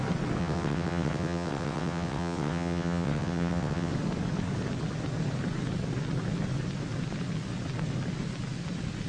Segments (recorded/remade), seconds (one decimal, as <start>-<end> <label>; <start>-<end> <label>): 0.0-0.4 recorded; 0.4-3.9 remade; 3.9-9.1 recorded